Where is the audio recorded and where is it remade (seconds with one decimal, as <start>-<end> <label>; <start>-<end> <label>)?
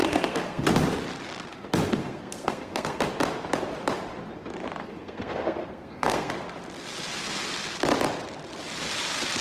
0.0-0.6 remade; 0.6-2.0 recorded; 2.0-3.1 remade; 3.1-4.8 recorded; 4.8-6.3 remade; 6.3-9.4 recorded